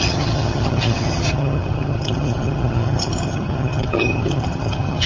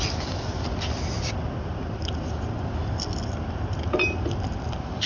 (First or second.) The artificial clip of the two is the first